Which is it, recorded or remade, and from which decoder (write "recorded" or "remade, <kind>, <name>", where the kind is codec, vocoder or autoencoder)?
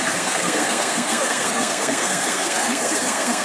remade, codec, SNAC